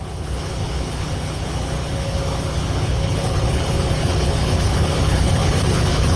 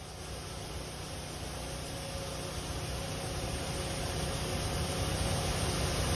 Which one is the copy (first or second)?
first